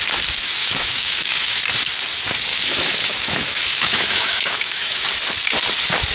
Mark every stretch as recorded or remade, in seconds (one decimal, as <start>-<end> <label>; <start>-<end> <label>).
0.0-0.6 recorded; 0.6-1.6 remade; 1.6-2.5 recorded; 2.5-5.1 remade; 5.1-6.1 recorded